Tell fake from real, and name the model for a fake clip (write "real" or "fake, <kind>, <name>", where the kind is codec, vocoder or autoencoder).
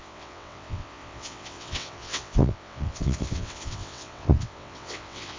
fake, vocoder, WaveNeXt